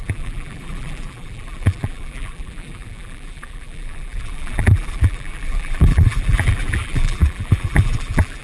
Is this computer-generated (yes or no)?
yes